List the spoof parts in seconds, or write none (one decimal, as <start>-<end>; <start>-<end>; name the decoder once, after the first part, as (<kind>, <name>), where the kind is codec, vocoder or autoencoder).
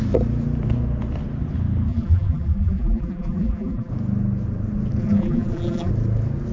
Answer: 1.9-3.9 (vocoder, BigVGAN v2); 5.0-5.9